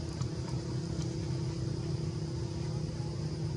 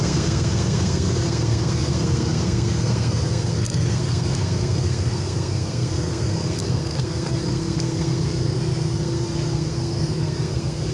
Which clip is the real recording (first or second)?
first